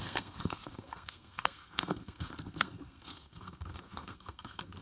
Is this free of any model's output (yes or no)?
no